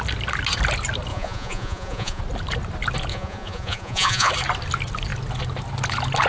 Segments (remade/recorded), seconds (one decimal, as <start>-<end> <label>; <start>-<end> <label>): 0.0-1.1 recorded; 1.1-2.2 remade; 2.2-3.1 recorded; 3.1-4.3 remade; 4.3-6.3 recorded